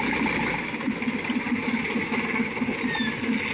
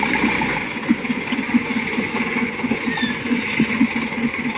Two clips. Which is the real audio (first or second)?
first